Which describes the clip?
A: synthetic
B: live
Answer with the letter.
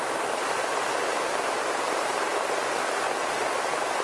A